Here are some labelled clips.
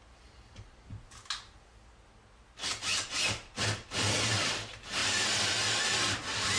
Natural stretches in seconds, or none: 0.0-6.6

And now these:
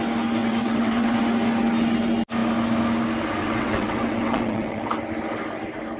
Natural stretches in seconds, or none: 0.0-0.4; 1.2-3.4; 4.9-6.0

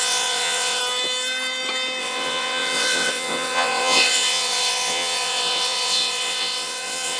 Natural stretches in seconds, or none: 0.8-2.0

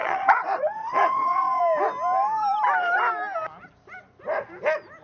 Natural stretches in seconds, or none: 1.6-5.0

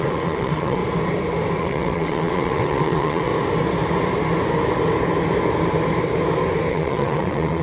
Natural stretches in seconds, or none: 0.8-1.6; 3.3-6.7

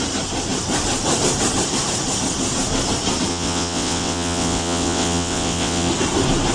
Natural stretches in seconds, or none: 0.0-3.3; 5.9-6.5

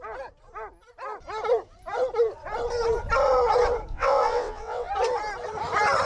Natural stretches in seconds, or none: 0.0-3.9; 4.9-6.1

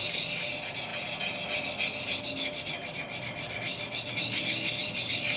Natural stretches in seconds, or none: 0.0-5.4